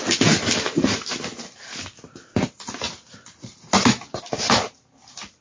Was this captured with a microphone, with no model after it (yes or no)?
yes